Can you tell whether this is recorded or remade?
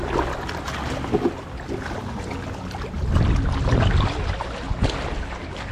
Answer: recorded